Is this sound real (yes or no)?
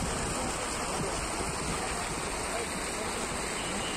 yes